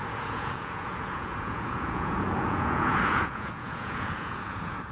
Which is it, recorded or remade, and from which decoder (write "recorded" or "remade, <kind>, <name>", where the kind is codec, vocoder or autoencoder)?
remade, vocoder, Vocos